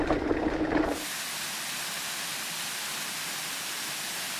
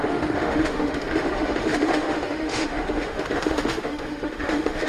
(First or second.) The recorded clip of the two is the first